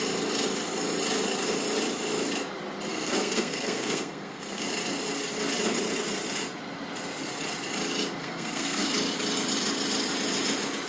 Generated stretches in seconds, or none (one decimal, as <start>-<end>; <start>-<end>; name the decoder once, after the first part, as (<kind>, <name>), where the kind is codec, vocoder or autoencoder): 2.9-4.7 (codec, SNAC); 8.2-8.9